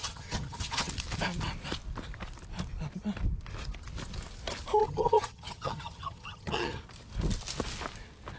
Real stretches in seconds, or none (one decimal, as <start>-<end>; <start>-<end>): 0.9-4.8; 6.8-8.4